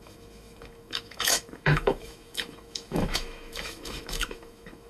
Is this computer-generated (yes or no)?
yes